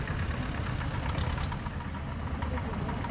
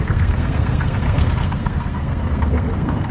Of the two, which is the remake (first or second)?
second